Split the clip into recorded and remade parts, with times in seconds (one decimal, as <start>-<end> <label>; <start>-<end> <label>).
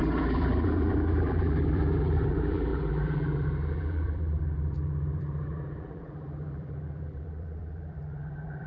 0.0-8.7 remade